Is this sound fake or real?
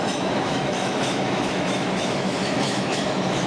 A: fake